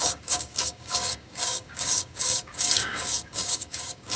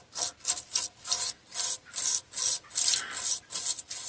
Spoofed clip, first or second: first